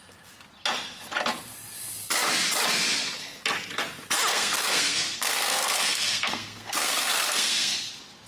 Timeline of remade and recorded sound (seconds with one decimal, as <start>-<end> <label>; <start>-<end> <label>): 0.0-4.3 recorded; 4.3-7.9 remade; 7.9-8.3 recorded